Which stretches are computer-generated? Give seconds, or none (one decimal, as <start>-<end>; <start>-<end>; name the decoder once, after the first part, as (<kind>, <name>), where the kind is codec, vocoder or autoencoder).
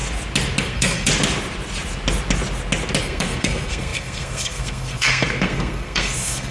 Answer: 0.6-1.1 (codec, SNAC); 3.0-6.5